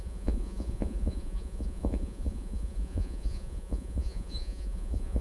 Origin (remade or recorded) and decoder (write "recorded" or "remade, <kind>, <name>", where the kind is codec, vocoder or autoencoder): remade, vocoder, Vocos